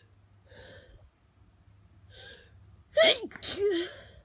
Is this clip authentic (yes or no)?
yes